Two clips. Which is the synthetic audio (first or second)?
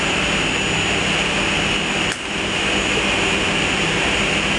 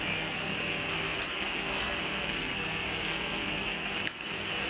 second